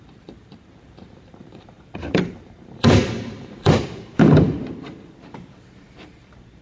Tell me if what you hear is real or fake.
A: fake